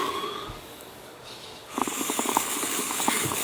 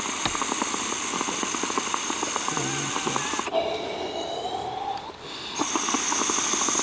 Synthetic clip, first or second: first